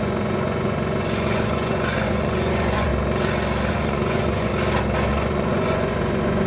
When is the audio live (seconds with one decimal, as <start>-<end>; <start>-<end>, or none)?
2.9-3.7; 4.5-5.1